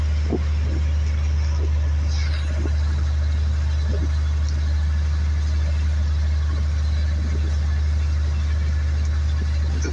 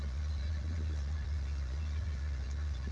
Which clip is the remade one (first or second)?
second